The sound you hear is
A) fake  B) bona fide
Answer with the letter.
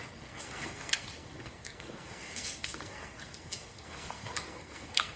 A